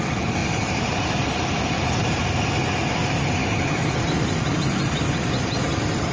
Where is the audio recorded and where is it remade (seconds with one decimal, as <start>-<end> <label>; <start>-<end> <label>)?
0.0-0.4 recorded; 0.4-2.5 remade; 2.5-3.4 recorded; 3.4-4.8 remade; 4.8-6.1 recorded